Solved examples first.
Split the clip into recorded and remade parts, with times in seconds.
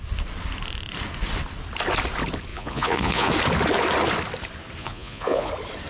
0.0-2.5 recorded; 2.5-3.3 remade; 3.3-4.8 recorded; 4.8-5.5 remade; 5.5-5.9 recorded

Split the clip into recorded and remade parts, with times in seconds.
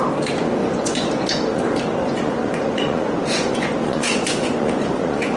0.0-0.6 recorded; 0.6-1.6 remade; 1.6-2.0 recorded; 2.0-5.4 remade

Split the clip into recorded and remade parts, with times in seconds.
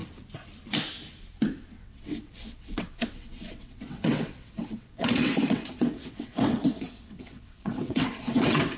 0.0-1.8 recorded; 1.8-8.8 remade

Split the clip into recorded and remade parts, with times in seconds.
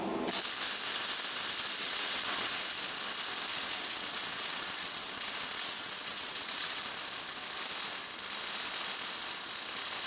0.0-1.8 recorded; 1.8-2.6 remade; 2.6-3.5 recorded; 3.5-6.8 remade; 6.8-10.1 recorded